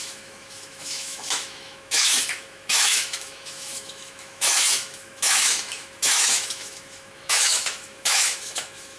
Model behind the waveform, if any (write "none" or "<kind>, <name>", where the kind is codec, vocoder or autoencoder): autoencoder, DAC-VAE